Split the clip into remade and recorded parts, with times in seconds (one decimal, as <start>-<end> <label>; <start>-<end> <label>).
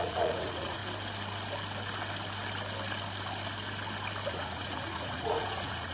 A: 0.0-0.8 remade; 0.8-4.3 recorded; 4.3-5.9 remade